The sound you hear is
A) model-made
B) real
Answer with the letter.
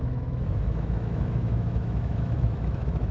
A